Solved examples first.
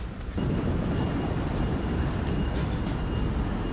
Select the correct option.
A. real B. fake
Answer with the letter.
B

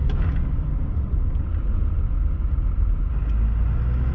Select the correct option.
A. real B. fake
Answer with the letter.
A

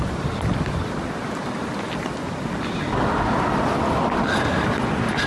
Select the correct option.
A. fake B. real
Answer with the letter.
A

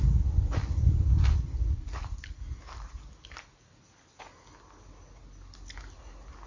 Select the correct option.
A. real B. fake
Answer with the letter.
A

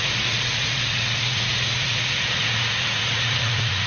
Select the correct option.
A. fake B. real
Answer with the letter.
A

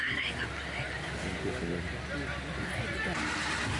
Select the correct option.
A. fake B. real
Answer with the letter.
B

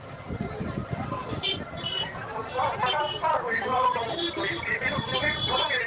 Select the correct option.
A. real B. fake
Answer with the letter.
A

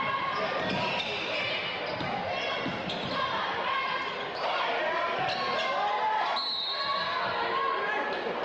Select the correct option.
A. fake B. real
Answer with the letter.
B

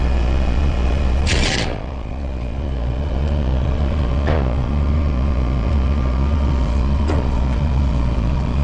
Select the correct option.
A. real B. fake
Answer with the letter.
B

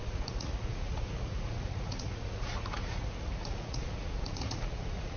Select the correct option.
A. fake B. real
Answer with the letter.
A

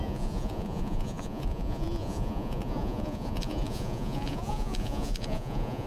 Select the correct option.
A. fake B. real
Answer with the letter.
A